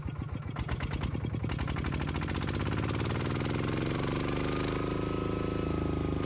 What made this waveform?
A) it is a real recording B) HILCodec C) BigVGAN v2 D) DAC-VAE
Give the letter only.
A